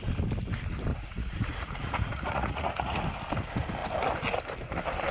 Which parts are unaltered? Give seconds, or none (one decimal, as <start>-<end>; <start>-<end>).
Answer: 0.0-0.9; 3.0-5.1